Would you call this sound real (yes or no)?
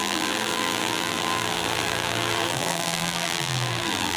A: no